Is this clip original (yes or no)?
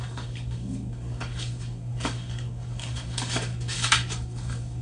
no